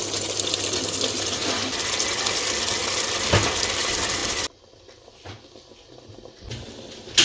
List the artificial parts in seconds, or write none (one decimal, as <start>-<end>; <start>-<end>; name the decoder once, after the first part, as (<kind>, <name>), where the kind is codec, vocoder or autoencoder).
none